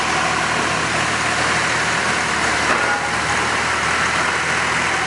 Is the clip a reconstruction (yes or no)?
no